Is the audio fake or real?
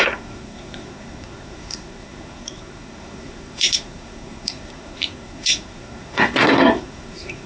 fake